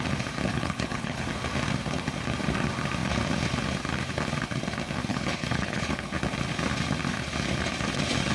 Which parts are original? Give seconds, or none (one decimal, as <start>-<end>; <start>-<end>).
0.0-0.5; 1.3-5.1; 6.2-8.3